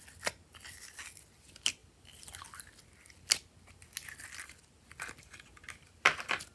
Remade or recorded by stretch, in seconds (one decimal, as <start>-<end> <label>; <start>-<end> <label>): 0.0-6.5 recorded